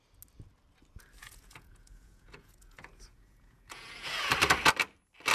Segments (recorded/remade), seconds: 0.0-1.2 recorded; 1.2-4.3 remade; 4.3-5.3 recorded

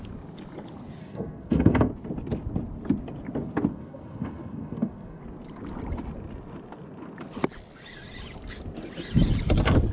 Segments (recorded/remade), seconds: 0.0-1.0 recorded; 1.0-1.9 remade; 1.9-3.7 recorded; 3.7-5.2 remade; 5.2-9.9 recorded

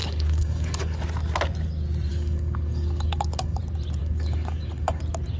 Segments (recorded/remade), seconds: 0.0-1.0 remade; 1.0-2.1 recorded; 2.1-3.6 remade; 3.6-4.0 recorded; 4.0-5.0 remade; 5.0-5.4 recorded

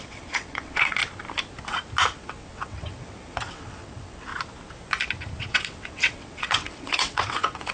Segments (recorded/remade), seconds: 0.0-1.0 remade; 1.0-2.2 recorded; 2.2-4.3 remade; 4.3-5.4 recorded; 5.4-7.7 remade

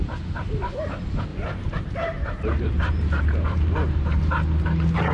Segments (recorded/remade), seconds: 0.0-1.3 recorded; 1.3-4.2 remade; 4.2-5.1 recorded

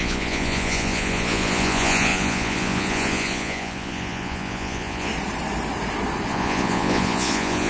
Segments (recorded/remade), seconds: 0.0-5.1 remade; 5.1-6.3 recorded; 6.3-7.7 remade

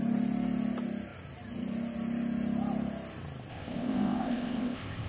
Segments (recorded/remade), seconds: 0.0-3.5 recorded; 3.5-5.1 remade

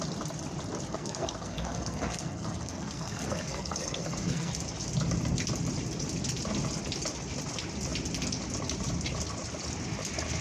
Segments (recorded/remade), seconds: 0.0-0.9 recorded; 0.9-4.5 remade; 4.5-10.4 recorded